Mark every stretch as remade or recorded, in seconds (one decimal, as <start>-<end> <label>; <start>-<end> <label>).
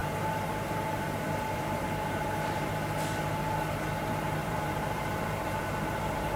0.0-2.7 remade; 2.7-4.4 recorded; 4.4-5.6 remade; 5.6-6.4 recorded